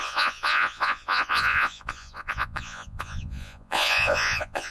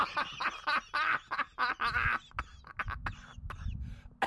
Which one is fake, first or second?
first